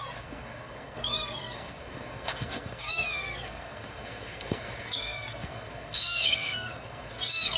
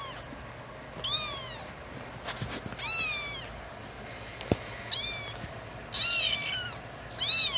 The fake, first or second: first